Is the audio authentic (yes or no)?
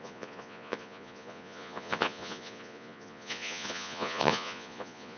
no